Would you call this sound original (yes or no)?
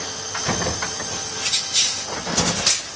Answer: yes